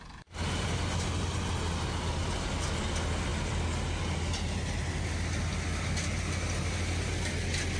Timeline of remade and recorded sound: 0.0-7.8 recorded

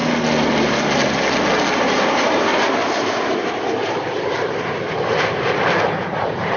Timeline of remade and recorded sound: 0.0-1.9 recorded; 1.9-6.6 remade

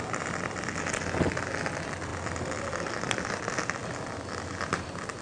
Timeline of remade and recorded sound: 0.0-5.2 recorded

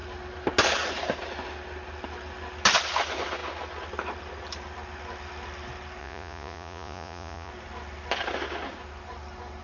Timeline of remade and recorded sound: 0.0-6.0 recorded; 6.0-7.5 remade; 7.5-9.6 recorded

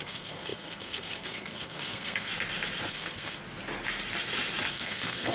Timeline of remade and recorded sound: 0.0-2.3 remade; 2.3-2.9 recorded; 2.9-3.4 remade; 3.4-4.7 recorded; 4.7-5.3 remade

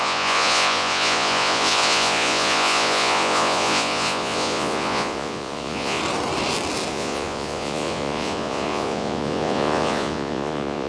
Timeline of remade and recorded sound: 0.0-6.0 remade; 6.0-6.9 recorded; 6.9-10.9 remade

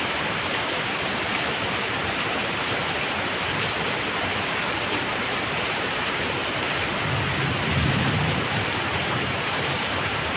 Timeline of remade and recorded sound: 0.0-2.8 remade; 2.8-5.1 recorded; 5.1-6.4 remade; 6.4-7.9 recorded; 7.9-10.4 remade